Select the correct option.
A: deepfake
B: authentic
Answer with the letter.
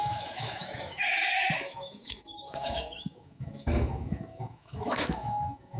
A